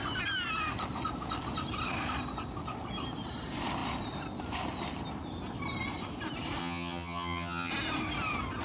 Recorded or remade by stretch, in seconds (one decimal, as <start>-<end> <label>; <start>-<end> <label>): 0.0-6.6 recorded; 6.6-7.7 remade; 7.7-8.6 recorded